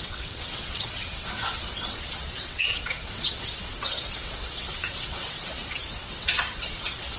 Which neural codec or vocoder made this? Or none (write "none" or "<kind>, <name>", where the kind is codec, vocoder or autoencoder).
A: vocoder, WaveNeXt